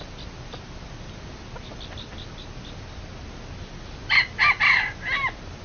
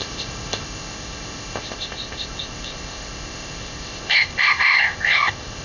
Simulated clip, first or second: second